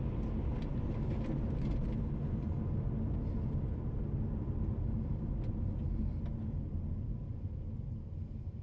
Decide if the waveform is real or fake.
real